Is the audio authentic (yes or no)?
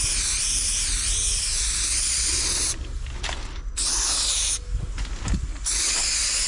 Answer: yes